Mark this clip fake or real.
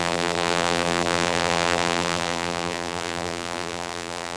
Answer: fake